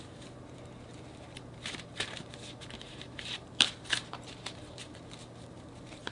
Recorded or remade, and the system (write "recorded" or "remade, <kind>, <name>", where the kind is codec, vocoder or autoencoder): remade, vocoder, BigVGAN v2